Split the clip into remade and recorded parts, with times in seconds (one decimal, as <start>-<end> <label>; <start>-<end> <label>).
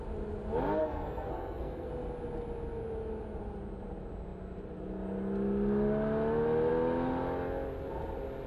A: 0.0-0.8 recorded; 0.8-1.9 remade; 1.9-8.5 recorded